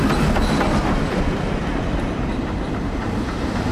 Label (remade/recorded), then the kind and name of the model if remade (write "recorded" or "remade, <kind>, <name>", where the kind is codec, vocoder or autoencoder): recorded